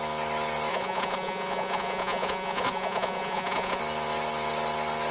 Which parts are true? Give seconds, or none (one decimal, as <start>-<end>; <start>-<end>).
0.0-0.7; 3.8-5.1